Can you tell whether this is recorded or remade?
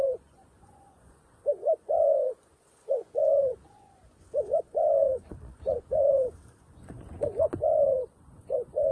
remade